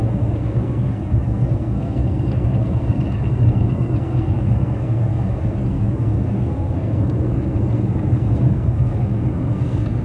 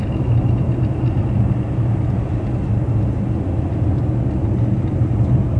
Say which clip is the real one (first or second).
second